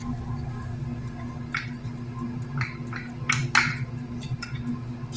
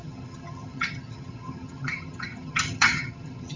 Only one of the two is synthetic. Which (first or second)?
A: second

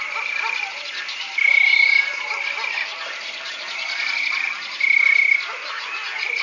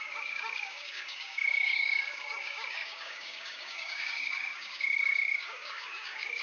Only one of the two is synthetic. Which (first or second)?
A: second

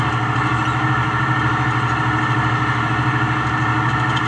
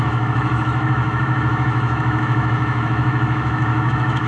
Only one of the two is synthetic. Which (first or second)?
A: second